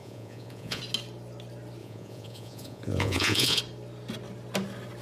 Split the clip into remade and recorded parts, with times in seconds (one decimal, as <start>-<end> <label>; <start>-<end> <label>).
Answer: 0.0-0.8 remade; 0.8-1.8 recorded; 1.8-3.6 remade; 3.6-5.0 recorded